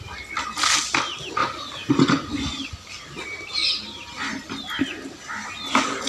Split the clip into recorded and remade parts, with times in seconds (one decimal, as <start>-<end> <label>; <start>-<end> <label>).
0.0-1.4 recorded; 1.4-1.9 remade; 1.9-3.6 recorded; 3.6-4.8 remade; 4.8-6.1 recorded